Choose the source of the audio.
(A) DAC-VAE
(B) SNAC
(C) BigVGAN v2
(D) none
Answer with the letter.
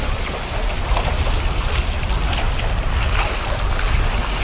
D